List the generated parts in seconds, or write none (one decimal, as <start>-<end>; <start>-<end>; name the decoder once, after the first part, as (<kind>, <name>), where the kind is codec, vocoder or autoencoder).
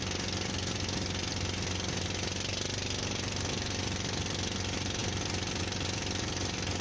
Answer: none